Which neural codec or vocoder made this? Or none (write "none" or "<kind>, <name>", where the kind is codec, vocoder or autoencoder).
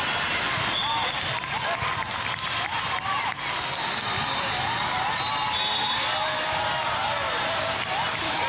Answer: none